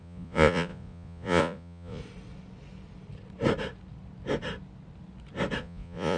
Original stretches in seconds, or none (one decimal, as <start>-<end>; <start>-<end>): 2.0-5.6